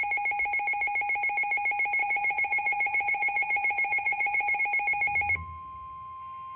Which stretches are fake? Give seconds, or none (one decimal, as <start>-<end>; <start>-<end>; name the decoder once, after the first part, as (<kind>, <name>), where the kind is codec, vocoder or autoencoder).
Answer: 2.0-4.6 (vocoder, BigVGAN v2)